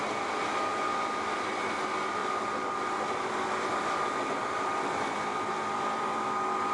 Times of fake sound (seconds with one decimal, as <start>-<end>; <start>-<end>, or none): 0.7-1.7; 2.2-6.2